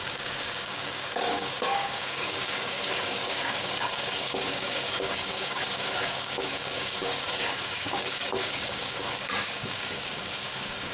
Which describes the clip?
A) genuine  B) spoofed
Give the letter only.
B